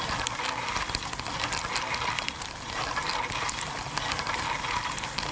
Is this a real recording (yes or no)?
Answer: yes